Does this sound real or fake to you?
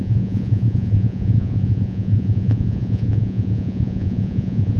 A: fake